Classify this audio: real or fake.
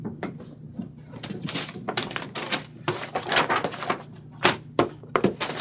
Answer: real